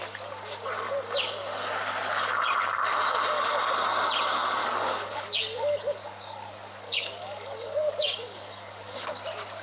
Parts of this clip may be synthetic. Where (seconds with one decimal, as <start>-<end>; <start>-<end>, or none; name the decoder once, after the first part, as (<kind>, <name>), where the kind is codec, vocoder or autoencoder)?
4.6-9.1 (codec, DAC)